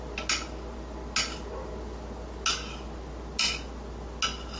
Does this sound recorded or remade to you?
recorded